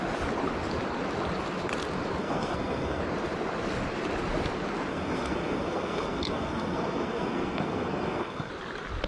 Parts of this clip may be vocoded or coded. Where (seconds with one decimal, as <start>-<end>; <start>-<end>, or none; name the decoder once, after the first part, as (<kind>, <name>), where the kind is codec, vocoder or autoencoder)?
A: 2.2-3.0 (codec, SNAC); 4.9-8.5